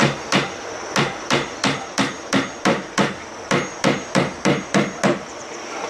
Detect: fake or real real